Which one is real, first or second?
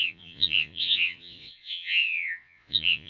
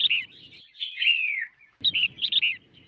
second